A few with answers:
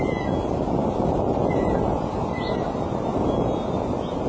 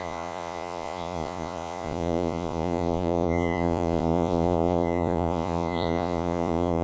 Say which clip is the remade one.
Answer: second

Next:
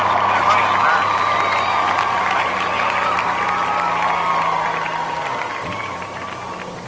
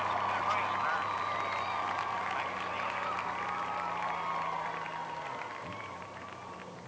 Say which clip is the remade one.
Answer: first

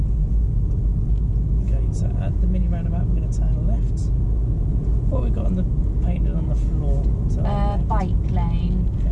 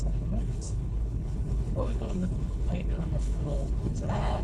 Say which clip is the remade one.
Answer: second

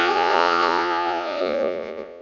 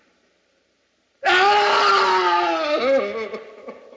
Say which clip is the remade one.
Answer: first